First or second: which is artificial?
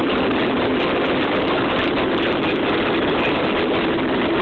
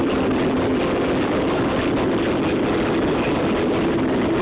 first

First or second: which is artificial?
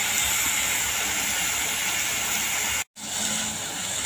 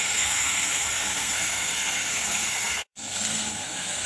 second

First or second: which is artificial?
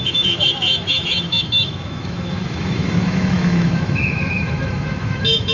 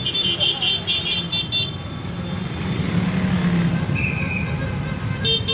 first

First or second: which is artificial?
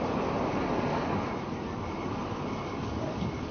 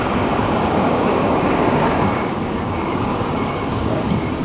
second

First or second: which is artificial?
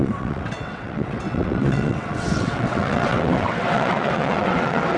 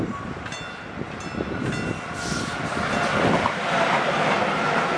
first